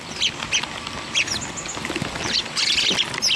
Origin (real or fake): real